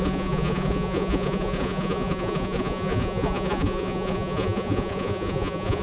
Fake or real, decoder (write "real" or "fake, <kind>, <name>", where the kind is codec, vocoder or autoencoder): fake, vocoder, Vocos